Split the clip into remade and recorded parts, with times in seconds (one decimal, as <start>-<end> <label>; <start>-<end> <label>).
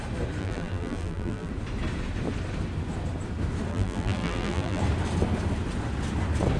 0.0-0.4 recorded; 0.4-1.5 remade; 1.5-3.7 recorded; 3.7-4.8 remade; 4.8-6.6 recorded